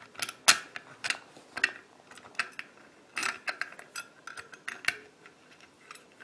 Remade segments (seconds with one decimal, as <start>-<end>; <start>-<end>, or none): none